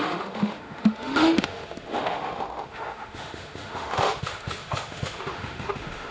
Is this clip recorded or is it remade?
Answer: remade